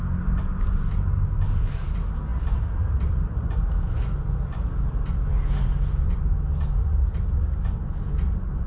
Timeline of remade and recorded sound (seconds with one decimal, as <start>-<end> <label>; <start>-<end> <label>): 0.0-8.7 recorded